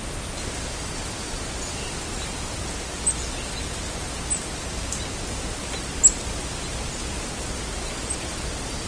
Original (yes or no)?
yes